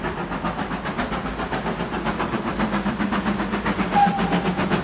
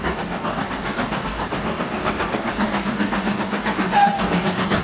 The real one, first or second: first